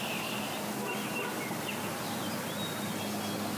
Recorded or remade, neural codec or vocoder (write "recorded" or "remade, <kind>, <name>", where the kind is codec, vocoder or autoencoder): recorded